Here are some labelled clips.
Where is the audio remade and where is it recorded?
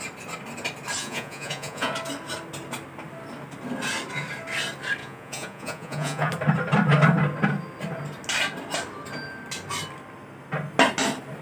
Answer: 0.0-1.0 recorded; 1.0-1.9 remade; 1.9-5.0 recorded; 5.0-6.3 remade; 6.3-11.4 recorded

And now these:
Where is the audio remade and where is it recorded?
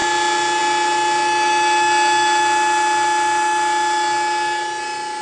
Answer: 0.0-5.2 recorded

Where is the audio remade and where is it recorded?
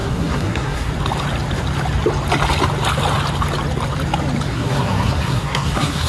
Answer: 0.0-0.9 remade; 0.9-4.5 recorded; 4.5-6.1 remade